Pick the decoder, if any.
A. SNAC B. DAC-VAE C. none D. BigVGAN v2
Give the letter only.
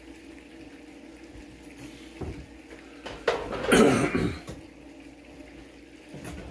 C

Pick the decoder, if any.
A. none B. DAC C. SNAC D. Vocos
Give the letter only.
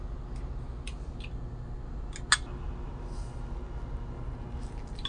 A